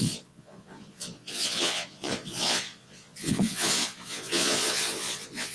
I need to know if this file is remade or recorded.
remade